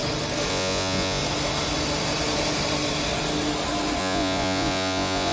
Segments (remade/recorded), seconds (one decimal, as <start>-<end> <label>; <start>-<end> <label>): 0.0-0.5 recorded; 0.5-1.2 remade; 1.2-4.0 recorded; 4.0-5.3 remade